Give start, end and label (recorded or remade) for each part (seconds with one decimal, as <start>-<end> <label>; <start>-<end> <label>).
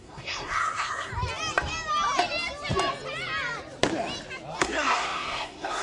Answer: 0.0-1.1 remade; 1.1-4.6 recorded; 4.6-5.8 remade